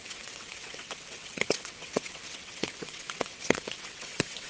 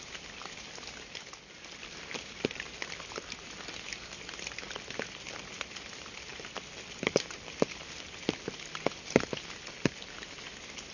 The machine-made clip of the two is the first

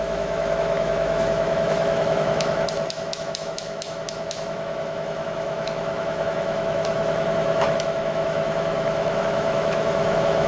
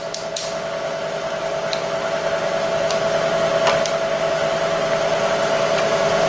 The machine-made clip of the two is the first